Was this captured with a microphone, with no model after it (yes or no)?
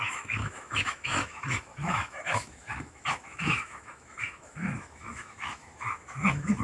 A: no